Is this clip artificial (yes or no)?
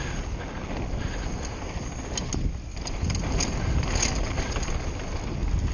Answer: no